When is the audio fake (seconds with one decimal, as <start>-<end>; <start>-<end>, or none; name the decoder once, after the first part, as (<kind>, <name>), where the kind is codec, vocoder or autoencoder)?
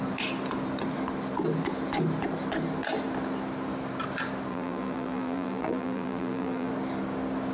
4.5-6.7 (vocoder, BigVGAN v2)